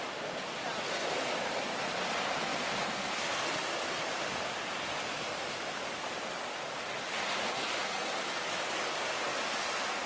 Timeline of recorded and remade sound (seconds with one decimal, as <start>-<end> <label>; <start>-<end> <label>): 0.0-10.1 recorded